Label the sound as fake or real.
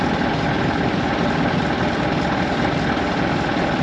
fake